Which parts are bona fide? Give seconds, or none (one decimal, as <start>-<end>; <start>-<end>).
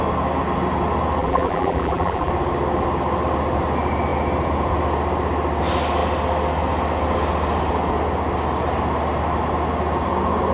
0.0-1.2; 2.3-10.5